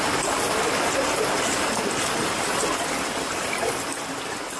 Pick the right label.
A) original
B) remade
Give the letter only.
A